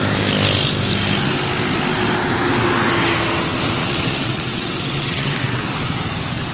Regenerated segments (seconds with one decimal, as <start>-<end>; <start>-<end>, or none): 3.8-5.6